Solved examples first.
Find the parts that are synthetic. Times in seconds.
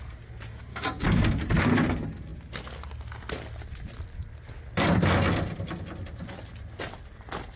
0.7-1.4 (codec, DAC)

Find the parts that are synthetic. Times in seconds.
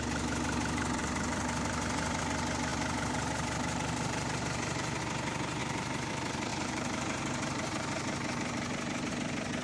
1.0-2.2 (vocoder, BigVGAN v2); 2.7-5.0; 5.6-6.1; 6.5-9.1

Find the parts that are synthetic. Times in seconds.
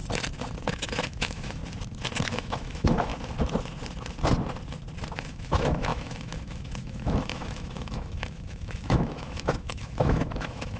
0.7-1.6 (autoencoder, DAC-VAE); 2.3-3.1; 5.1-10.8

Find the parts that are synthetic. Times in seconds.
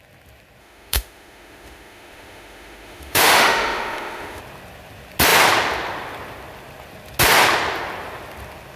0.6-4.4 (autoencoder, DAC-VAE)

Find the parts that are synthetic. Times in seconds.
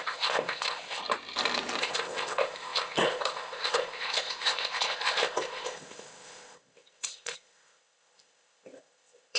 0.0-1.0 (codec, ZipCodec); 1.8-9.4